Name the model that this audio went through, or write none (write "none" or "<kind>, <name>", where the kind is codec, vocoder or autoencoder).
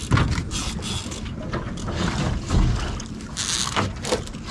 none